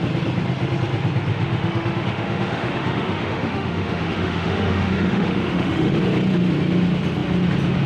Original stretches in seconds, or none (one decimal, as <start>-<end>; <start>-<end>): 0.0-1.3; 6.0-7.9